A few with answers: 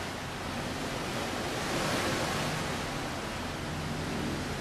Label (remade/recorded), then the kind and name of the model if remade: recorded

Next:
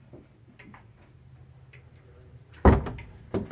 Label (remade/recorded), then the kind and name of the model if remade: recorded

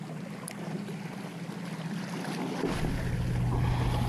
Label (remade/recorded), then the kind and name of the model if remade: recorded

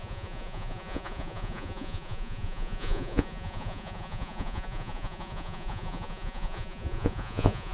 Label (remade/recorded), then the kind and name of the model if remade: remade, vocoder, Vocos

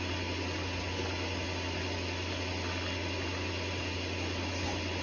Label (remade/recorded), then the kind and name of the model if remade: recorded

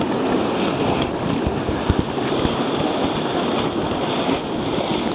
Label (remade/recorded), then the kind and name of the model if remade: recorded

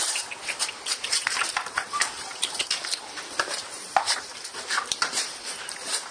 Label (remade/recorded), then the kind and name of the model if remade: remade, vocoder, BigVGAN v2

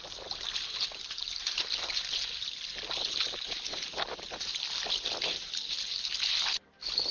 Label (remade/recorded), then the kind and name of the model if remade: recorded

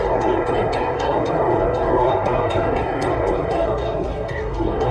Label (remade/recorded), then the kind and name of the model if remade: remade, codec, SNAC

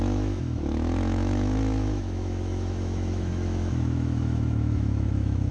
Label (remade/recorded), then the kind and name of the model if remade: remade, autoencoder, DAC-VAE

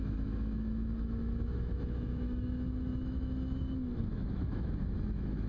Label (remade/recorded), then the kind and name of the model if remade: remade, autoencoder, DAC-VAE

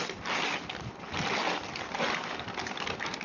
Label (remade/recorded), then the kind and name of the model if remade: recorded